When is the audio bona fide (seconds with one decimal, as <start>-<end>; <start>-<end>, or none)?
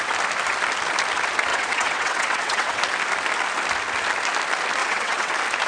0.0-1.5; 2.8-4.8; 5.3-5.7